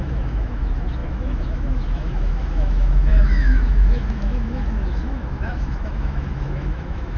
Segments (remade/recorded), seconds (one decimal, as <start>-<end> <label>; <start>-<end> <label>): 0.0-7.2 remade